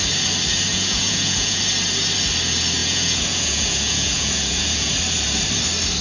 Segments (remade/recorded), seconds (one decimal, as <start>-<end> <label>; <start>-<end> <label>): 0.0-0.7 recorded; 0.7-1.6 remade; 1.6-2.8 recorded; 2.8-4.9 remade; 4.9-6.0 recorded